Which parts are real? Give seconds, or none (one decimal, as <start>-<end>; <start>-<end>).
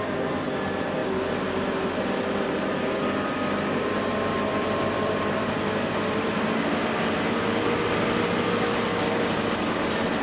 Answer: 0.0-4.5; 7.8-10.2